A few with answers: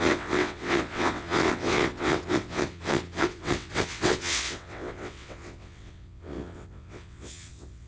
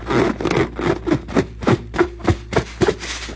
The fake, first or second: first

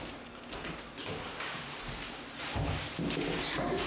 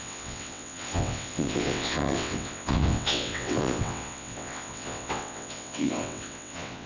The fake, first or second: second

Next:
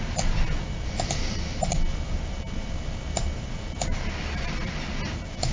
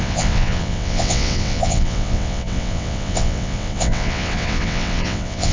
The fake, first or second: second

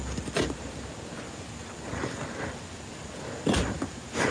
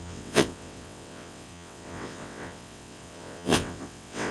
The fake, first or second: second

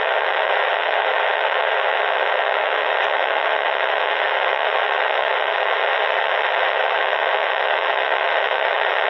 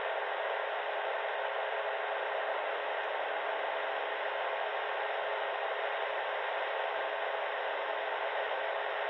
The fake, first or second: first